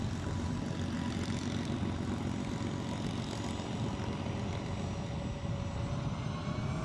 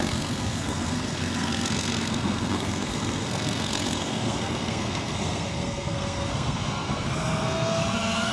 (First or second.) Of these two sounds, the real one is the first